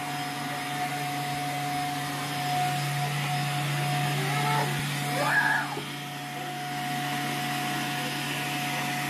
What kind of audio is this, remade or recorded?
recorded